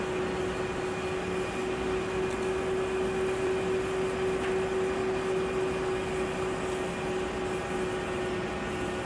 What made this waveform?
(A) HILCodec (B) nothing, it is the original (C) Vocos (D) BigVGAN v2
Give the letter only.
B